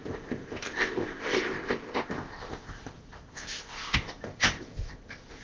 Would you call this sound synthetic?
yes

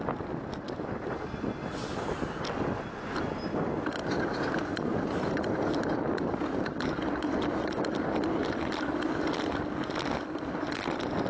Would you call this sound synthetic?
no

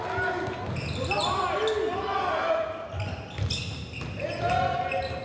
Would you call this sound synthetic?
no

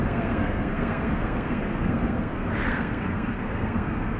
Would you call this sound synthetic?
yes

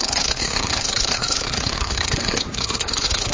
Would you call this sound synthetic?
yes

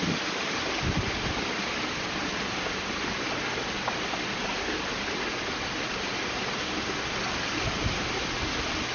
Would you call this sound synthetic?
no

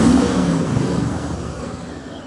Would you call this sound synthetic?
yes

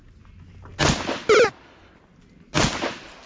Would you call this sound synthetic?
no